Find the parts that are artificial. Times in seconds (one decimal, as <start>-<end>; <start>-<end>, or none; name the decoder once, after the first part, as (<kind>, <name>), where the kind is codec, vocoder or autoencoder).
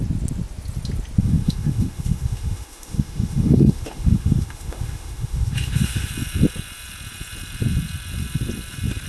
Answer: 1.2-6.1 (autoencoder, DAC-VAE)